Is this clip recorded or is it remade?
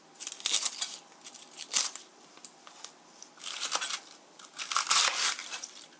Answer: recorded